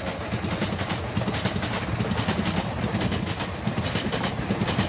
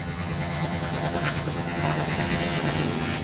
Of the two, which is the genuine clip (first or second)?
first